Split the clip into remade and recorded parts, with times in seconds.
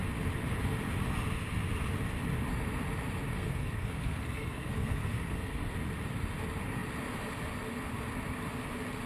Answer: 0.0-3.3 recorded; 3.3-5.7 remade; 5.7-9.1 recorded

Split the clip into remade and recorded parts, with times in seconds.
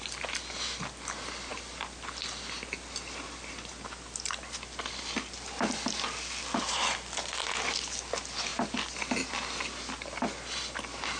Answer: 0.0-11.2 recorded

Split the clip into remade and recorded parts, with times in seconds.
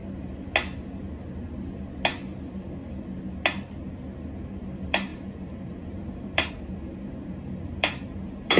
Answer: 0.0-4.4 recorded; 4.4-8.6 remade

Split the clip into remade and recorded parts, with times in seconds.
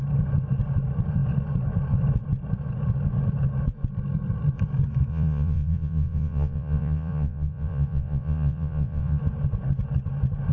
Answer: 0.0-5.1 recorded; 5.1-9.2 remade; 9.2-10.5 recorded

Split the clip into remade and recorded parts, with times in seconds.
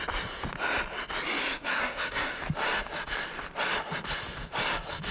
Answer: 0.0-1.4 recorded; 1.4-2.4 remade; 2.4-5.1 recorded